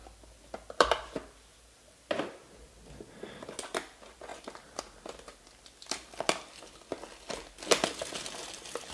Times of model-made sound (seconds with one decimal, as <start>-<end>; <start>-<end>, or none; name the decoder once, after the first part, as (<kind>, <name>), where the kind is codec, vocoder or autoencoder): 0.0-2.0 (vocoder, BigVGAN v2); 4.3-4.8